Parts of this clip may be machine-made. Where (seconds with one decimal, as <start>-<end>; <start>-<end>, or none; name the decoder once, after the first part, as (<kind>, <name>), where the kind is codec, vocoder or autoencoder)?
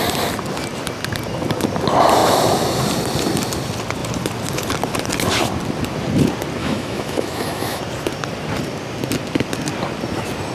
6.6-7.8 (autoencoder, DAC-VAE)